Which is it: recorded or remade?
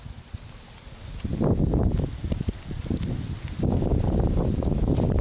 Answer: recorded